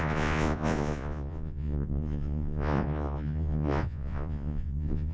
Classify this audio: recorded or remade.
remade